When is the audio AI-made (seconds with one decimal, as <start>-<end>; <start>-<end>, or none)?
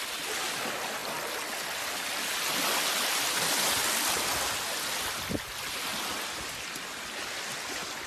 none